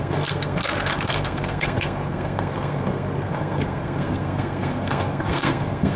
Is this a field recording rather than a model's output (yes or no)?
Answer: no